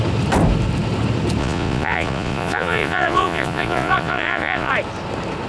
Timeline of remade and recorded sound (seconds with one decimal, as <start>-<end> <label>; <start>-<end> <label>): 0.0-1.4 recorded; 1.4-4.7 remade; 4.7-5.5 recorded